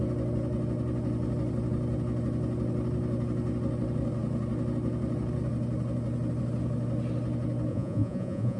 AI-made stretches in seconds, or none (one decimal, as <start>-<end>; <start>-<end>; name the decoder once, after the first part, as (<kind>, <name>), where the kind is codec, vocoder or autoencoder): 7.7-8.6 (vocoder, Vocos)